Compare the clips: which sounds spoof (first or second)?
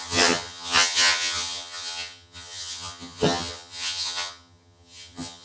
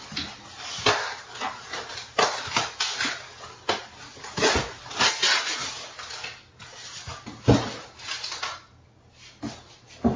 first